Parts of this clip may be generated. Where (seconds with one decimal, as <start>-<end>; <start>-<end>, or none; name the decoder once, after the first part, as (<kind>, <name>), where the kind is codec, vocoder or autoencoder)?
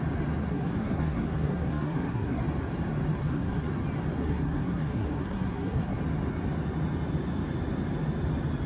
0.4-2.4 (codec, SNAC); 3.2-3.7; 4.2-6.0